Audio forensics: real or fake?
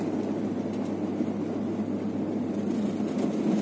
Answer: real